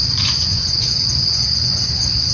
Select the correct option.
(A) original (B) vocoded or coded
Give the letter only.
B